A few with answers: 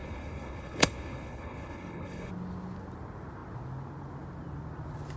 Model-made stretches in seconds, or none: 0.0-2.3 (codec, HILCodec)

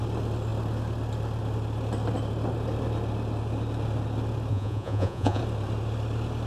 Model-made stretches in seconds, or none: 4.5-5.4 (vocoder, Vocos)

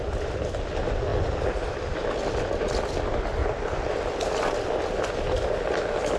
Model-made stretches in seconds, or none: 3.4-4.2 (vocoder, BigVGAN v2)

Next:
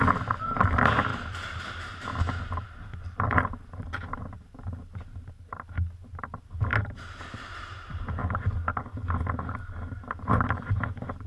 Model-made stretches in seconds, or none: 6.7-7.2 (vocoder, BigVGAN v2)

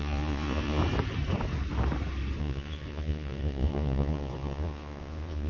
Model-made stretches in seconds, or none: 0.0-0.8 (vocoder, Vocos); 2.4-5.5

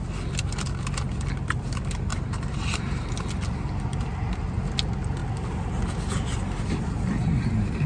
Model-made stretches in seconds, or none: 2.1-3.1 (vocoder, BigVGAN v2)

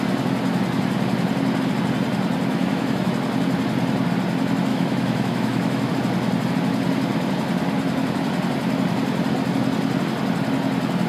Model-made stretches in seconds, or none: 2.5-3.1 (autoencoder, DAC-VAE); 4.7-5.9

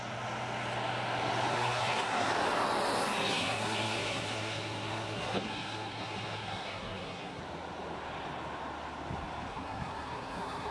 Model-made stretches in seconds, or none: 1.5-2.3 (codec, SNAC); 3.3-7.4; 9.5-10.7